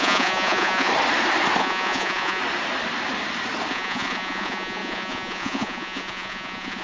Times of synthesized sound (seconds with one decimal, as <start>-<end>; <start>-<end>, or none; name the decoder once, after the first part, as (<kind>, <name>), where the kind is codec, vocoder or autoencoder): 0.0-0.9 (vocoder, Vocos); 1.6-2.4; 3.7-6.8